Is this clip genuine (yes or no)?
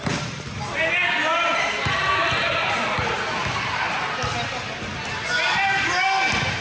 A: yes